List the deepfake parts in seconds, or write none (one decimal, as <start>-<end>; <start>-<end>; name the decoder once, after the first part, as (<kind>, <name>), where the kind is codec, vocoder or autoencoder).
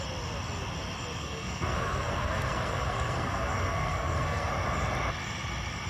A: 1.2-4.5 (codec, SNAC)